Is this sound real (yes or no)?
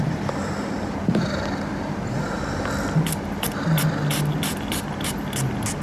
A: yes